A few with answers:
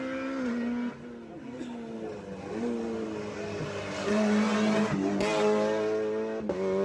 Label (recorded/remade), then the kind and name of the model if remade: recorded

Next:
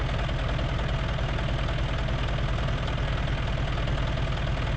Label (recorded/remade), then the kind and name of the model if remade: recorded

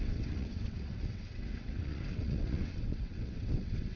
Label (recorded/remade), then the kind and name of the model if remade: remade, vocoder, WaveNeXt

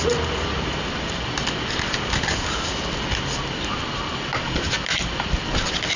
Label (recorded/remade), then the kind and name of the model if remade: recorded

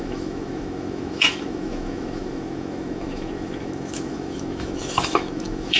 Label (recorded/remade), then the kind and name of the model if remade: remade, autoencoder, DAC-VAE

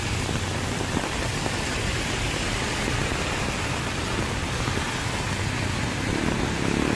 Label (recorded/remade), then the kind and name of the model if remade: recorded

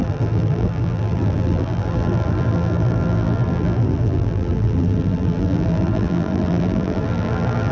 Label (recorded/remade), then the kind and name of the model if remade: remade, vocoder, BigVGAN v2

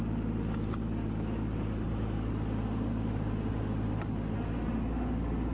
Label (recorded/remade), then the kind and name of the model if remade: recorded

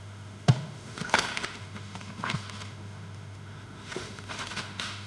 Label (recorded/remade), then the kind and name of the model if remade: remade, autoencoder, DAC-VAE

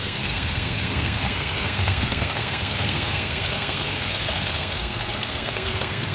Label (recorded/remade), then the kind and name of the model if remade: remade, codec, SNAC